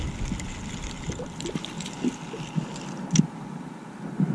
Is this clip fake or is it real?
real